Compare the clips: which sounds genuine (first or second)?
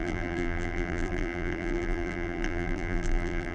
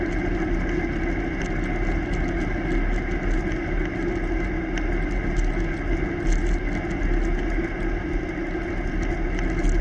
second